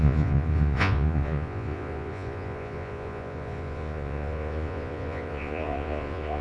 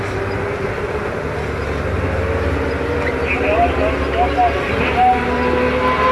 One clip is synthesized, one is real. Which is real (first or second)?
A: second